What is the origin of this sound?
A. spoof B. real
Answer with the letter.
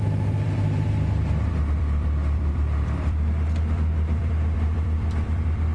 A